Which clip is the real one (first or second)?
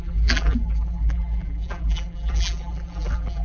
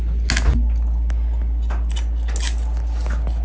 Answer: second